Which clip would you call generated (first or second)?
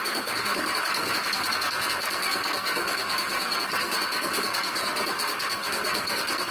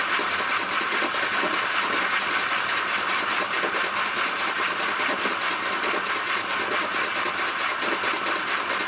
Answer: first